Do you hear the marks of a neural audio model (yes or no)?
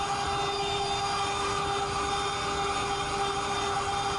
no